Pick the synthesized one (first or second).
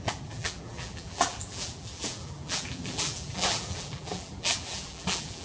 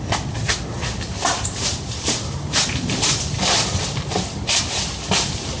first